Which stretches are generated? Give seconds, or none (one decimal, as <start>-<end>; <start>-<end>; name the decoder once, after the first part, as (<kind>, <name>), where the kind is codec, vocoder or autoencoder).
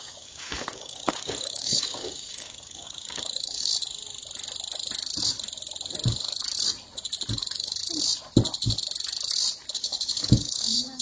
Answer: 0.0-3.7 (codec, DAC); 7.3-7.8; 9.7-11.0